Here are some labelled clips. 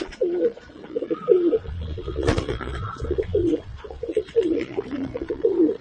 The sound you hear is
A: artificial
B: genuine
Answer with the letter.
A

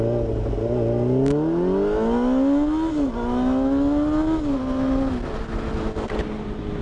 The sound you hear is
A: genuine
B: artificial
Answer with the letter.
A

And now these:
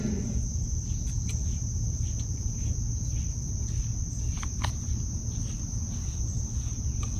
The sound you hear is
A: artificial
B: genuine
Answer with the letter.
B